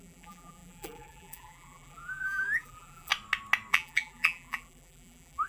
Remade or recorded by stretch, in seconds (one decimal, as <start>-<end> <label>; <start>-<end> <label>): 0.0-3.1 remade; 3.1-3.7 recorded; 3.7-5.5 remade